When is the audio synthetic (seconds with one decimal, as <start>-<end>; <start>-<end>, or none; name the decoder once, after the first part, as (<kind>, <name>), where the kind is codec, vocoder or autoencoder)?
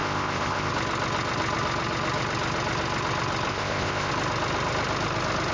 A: 0.0-0.7 (codec, ZipCodec); 3.5-4.1